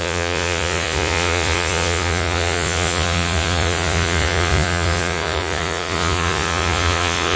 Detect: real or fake fake